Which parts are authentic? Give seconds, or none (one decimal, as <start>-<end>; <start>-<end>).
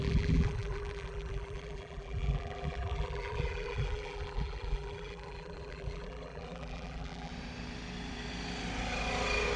7.3-9.6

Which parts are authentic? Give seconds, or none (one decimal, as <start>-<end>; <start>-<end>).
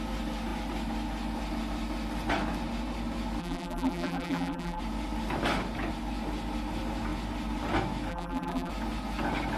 0.0-3.4; 4.8-8.1; 8.7-9.6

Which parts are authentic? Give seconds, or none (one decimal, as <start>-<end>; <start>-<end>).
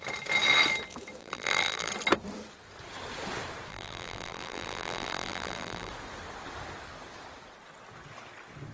0.0-1.2; 1.9-3.7; 5.9-8.7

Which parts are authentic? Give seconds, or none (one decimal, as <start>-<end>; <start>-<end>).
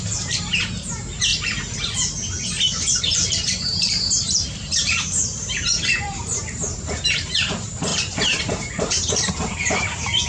1.3-3.0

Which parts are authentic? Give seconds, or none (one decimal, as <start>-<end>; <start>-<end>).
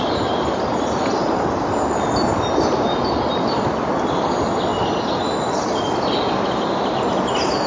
0.0-7.7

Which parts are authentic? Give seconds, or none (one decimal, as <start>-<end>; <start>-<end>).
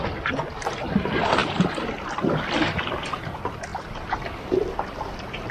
0.0-1.4; 3.1-3.7; 4.6-5.5